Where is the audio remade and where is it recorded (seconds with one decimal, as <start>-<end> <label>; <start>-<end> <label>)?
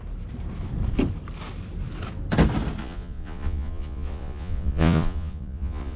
0.0-2.8 recorded; 2.8-6.0 remade